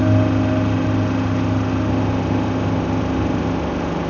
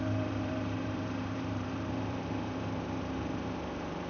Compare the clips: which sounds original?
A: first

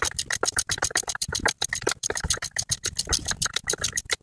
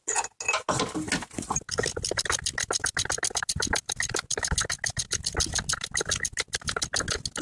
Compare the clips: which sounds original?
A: second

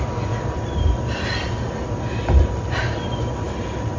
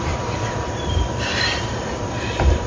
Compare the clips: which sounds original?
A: first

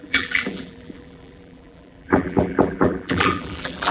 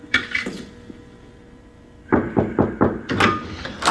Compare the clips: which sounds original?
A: second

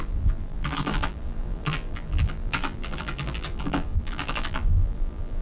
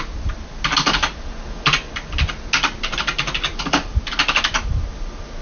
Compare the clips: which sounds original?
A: second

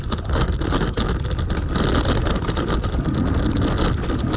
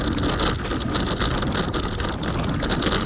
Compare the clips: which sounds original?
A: second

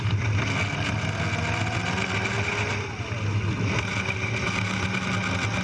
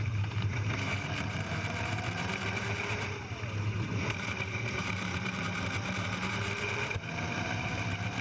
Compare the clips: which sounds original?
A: first